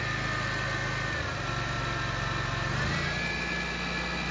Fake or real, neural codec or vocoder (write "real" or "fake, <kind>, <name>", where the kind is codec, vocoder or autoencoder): real